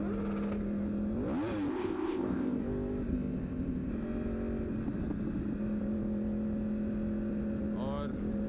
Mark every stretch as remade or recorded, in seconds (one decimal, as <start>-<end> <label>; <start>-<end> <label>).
0.0-1.7 recorded; 1.7-2.6 remade; 2.6-3.1 recorded; 3.1-3.9 remade; 3.9-8.5 recorded